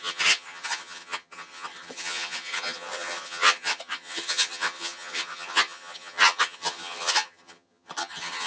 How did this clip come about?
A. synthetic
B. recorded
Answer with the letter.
A